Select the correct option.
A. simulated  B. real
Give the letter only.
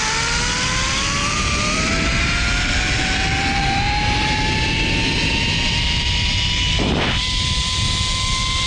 B